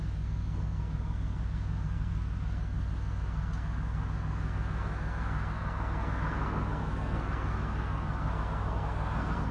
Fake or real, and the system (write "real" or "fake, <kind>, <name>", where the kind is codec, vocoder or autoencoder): fake, codec, SNAC